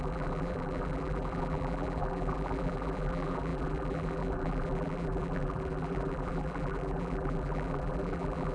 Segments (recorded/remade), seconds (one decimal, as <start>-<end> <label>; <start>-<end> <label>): 0.0-8.5 remade